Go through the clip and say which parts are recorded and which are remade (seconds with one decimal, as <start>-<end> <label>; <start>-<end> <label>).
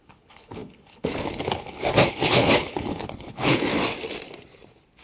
0.0-3.7 remade; 3.7-5.0 recorded